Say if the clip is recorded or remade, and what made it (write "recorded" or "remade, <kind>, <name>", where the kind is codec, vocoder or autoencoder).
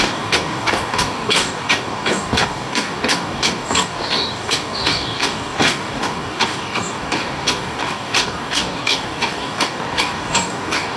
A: remade, codec, DAC